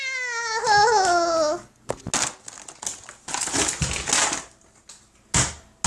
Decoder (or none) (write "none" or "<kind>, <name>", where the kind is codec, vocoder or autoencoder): none